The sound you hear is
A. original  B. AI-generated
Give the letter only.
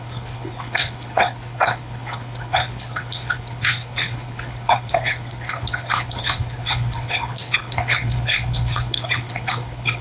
B